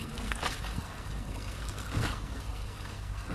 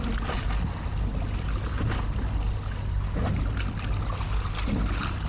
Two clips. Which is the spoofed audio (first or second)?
first